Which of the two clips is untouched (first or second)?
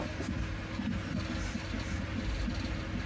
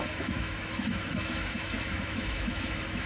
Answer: first